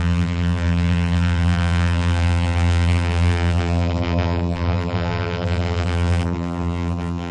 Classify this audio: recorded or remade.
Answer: remade